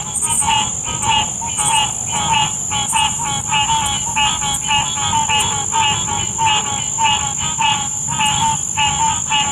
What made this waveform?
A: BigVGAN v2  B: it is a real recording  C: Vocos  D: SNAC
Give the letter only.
B